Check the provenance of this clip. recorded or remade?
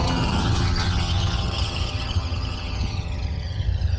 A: remade